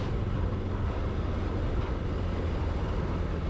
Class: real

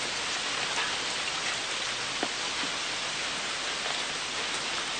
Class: real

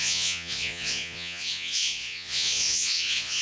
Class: fake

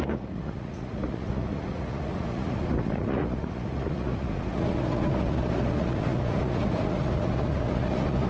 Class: fake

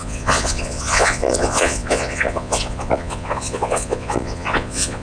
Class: fake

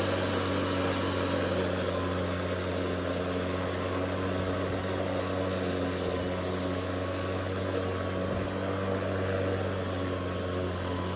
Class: real